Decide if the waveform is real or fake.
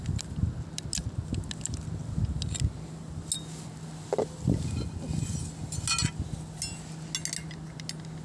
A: real